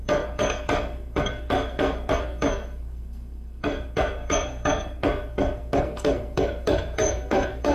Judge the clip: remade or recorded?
remade